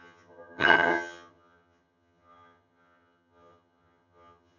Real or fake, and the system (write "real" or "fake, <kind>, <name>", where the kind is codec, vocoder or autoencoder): fake, vocoder, HiFi-GAN